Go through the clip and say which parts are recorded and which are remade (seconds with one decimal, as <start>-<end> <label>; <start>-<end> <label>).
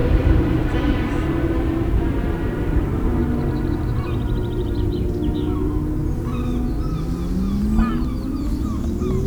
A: 0.0-5.1 remade; 5.1-9.3 recorded